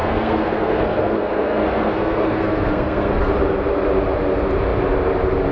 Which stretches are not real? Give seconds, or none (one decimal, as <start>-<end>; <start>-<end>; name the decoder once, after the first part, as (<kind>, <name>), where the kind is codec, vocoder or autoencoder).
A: 0.0-3.3 (codec, SNAC)